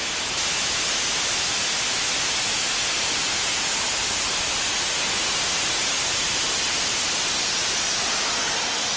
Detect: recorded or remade recorded